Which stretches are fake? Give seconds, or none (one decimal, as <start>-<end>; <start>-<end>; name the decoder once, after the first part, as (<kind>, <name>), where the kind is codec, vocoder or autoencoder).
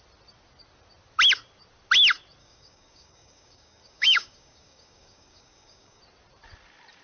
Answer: 2.4-6.0 (codec, DAC)